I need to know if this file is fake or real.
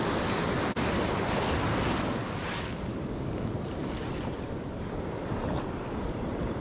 real